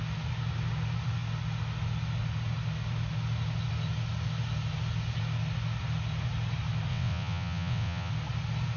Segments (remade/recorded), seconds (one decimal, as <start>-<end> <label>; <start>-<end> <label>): 0.0-6.9 recorded; 6.9-8.1 remade; 8.1-8.8 recorded